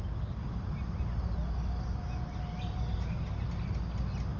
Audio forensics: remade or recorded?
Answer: recorded